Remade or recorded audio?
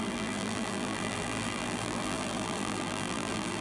remade